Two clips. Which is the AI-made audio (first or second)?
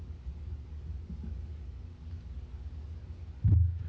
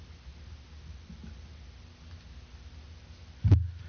first